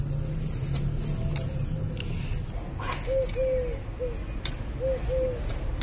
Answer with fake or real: real